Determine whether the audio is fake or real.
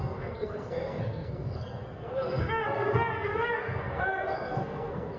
fake